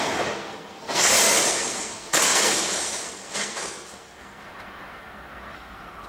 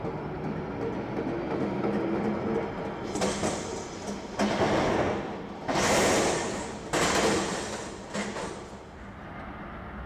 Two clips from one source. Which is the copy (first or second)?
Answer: first